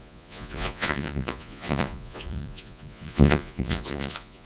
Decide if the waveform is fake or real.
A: fake